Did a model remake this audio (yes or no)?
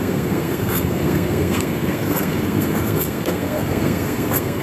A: yes